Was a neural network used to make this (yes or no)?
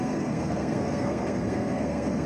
yes